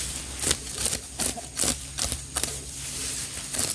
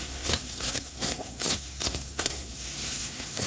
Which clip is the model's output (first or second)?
second